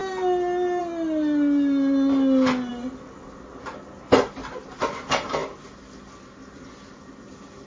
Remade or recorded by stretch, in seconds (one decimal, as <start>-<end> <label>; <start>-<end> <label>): 0.0-7.7 recorded